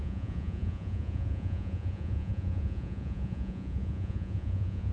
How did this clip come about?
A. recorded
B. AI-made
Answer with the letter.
B